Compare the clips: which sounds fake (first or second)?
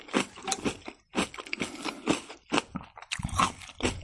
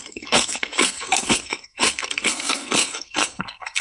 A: second